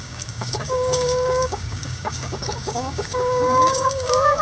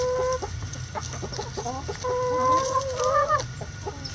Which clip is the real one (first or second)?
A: second